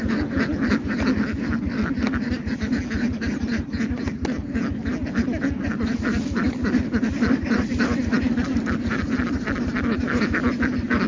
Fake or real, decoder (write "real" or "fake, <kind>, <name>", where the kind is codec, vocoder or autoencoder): real